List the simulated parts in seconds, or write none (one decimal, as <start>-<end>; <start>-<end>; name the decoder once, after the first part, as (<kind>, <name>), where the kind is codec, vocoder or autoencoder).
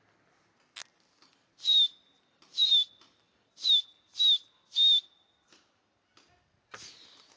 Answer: none